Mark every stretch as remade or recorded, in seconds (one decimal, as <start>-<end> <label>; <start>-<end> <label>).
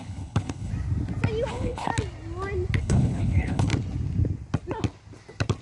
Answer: 0.0-0.7 remade; 0.7-1.5 recorded; 1.5-1.9 remade; 1.9-2.8 recorded; 2.8-3.7 remade; 3.7-5.6 recorded